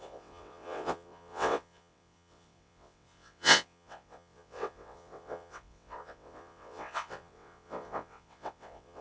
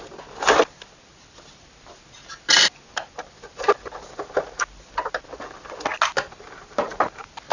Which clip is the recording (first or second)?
second